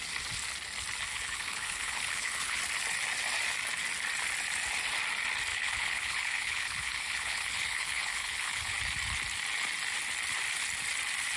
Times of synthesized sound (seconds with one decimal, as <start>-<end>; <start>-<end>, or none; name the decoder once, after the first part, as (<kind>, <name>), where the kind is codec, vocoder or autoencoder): 1.1-2.6 (codec, HILCodec); 5.5-8.7